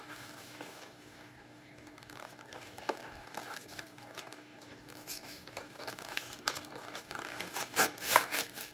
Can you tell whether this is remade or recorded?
remade